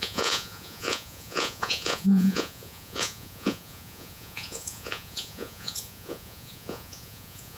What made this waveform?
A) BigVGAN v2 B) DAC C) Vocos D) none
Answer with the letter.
C